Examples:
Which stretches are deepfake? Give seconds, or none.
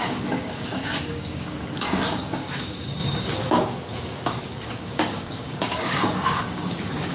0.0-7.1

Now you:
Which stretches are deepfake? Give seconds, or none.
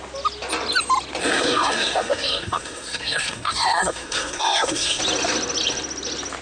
1.2-5.0